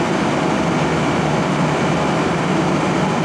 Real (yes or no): no